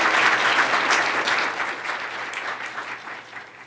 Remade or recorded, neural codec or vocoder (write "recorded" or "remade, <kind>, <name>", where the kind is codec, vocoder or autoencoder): recorded